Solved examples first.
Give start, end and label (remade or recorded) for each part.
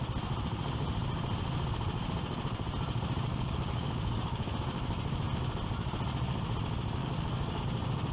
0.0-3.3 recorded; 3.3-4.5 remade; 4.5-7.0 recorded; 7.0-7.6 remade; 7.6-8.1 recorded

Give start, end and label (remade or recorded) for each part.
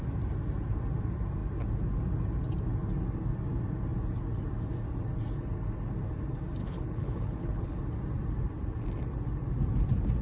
0.0-6.6 recorded; 6.6-7.8 remade; 7.8-10.2 recorded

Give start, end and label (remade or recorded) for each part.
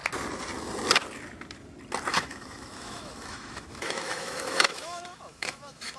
0.0-2.1 recorded; 2.1-6.0 remade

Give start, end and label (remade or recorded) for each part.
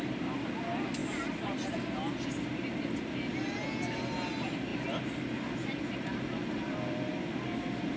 0.0-8.0 recorded